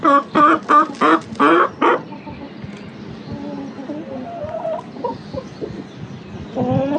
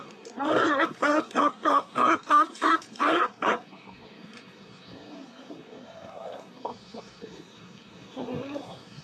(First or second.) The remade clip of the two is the second